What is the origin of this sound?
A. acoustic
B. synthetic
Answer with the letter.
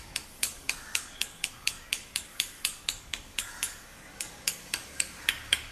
B